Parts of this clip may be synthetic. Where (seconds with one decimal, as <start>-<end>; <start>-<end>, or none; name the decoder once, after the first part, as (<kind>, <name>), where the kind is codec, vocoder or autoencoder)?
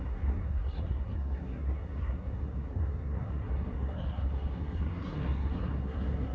0.0-6.3 (codec, SNAC)